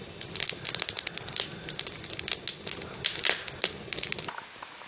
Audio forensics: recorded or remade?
recorded